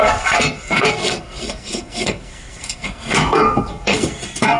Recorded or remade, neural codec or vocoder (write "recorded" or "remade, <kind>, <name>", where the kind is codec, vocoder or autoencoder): remade, codec, SNAC